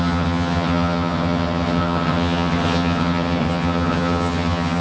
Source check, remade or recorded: remade